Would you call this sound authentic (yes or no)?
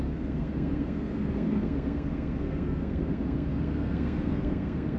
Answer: no